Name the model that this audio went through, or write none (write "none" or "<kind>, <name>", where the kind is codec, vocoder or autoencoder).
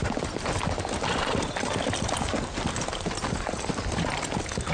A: none